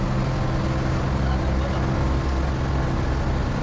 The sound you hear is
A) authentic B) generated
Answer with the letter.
A